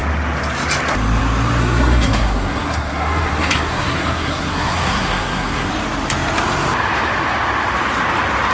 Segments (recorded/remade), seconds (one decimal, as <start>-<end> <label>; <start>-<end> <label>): 0.0-1.6 recorded; 1.6-5.7 remade; 5.7-8.5 recorded